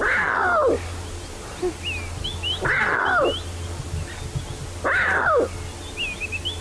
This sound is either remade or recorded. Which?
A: recorded